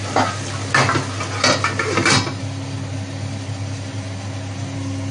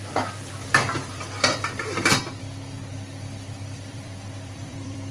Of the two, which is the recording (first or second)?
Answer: first